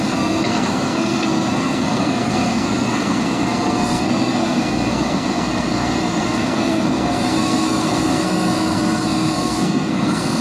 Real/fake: fake